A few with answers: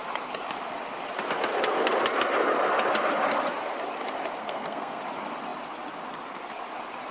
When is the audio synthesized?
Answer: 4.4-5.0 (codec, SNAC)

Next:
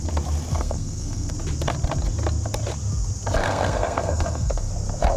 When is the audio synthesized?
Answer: 0.5-1.3 (codec, SNAC); 3.4-4.7

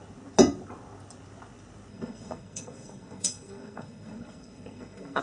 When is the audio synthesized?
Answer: 1.9-5.2 (codec, SNAC)